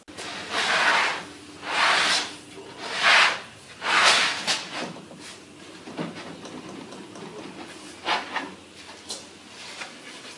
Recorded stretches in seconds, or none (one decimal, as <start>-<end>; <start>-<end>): 0.0-4.0; 5.2-10.4